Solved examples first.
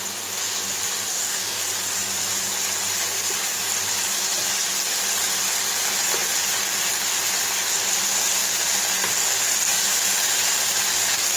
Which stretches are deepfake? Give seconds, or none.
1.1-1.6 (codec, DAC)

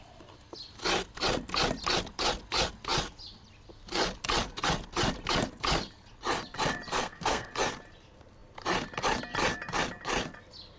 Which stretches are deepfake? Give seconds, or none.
6.9-7.5 (codec, SNAC)

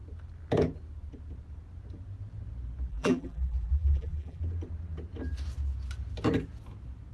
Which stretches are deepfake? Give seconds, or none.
2.9-4.4 (vocoder, BigVGAN v2)

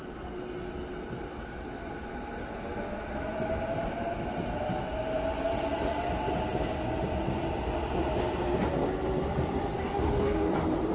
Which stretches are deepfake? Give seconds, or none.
9.7-10.5 (codec, DAC)

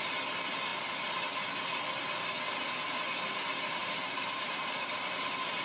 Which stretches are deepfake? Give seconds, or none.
3.8-4.9 (vocoder, BigVGAN v2)